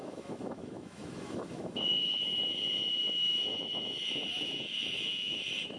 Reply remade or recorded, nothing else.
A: remade